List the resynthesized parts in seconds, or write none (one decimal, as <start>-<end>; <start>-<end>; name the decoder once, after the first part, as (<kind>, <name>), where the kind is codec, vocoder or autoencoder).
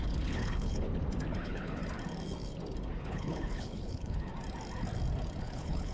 0.0-0.9 (codec, HILCodec); 1.4-1.8; 3.0-4.3; 5.4-5.9